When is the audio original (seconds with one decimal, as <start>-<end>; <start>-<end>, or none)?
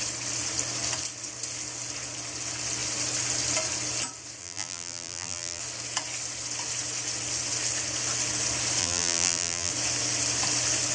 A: 0.0-4.4; 5.6-8.8; 9.7-10.9